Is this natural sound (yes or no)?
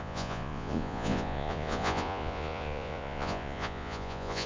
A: no